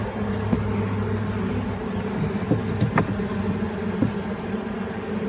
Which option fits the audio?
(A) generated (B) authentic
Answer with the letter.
B